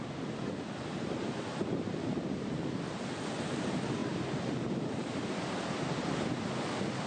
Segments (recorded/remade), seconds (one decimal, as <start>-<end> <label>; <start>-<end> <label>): 0.0-7.1 recorded